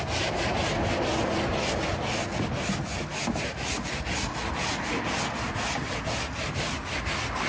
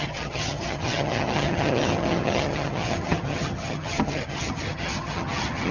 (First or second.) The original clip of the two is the first